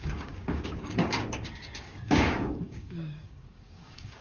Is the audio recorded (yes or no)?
no